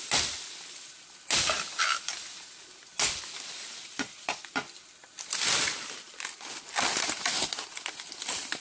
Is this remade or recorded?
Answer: recorded